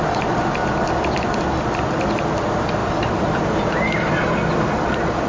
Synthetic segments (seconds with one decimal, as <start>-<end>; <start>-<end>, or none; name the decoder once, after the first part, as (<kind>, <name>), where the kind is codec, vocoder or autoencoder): 2.8-4.3 (vocoder, BigVGAN v2)